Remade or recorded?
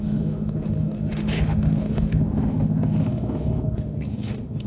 remade